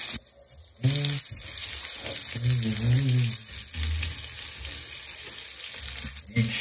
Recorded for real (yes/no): yes